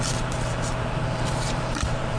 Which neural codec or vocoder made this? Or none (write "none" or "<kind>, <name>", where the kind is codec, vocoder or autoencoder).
vocoder, BigVGAN v2